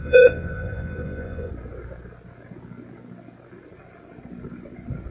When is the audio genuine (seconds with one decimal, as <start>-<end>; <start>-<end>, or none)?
1.5-5.1